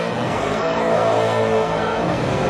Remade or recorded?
remade